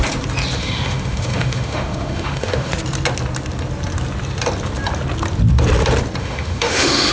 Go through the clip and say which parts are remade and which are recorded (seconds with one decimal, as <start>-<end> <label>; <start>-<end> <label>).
0.0-0.6 recorded; 0.6-2.7 remade; 2.7-6.2 recorded; 6.2-7.1 remade